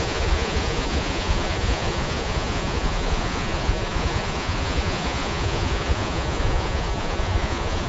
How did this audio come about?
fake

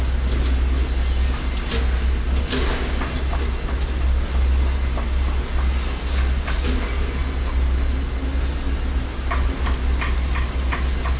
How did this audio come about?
real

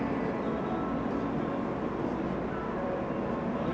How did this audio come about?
fake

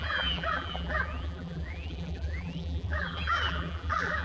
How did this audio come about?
fake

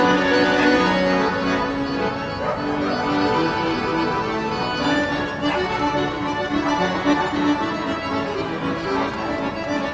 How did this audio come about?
real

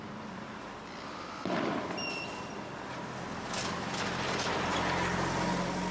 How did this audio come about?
real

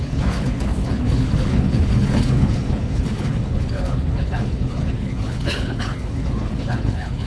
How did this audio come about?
fake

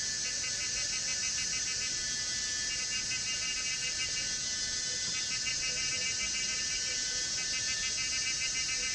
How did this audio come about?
real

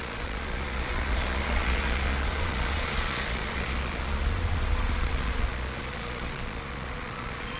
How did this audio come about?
fake